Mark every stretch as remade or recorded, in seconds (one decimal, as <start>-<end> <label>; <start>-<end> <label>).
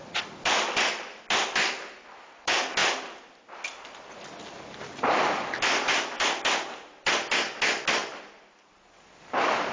0.0-9.7 recorded